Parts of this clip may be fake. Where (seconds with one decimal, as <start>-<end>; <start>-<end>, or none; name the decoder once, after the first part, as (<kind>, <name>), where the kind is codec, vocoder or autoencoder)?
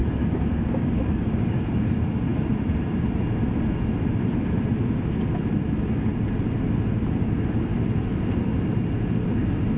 0.0-1.7 (codec, DAC)